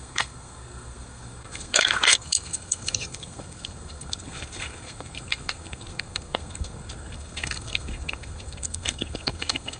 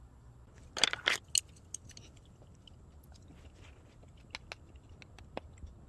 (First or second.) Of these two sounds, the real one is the second